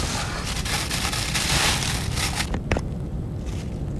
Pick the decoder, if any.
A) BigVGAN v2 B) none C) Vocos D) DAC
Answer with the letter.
A